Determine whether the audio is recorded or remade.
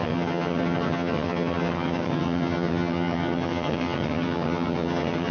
remade